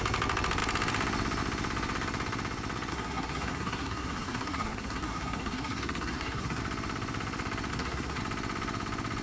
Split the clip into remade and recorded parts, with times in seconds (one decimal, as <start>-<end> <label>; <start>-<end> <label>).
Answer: 0.0-2.9 recorded; 2.9-6.6 remade; 6.6-7.7 recorded; 7.7-8.2 remade; 8.2-9.2 recorded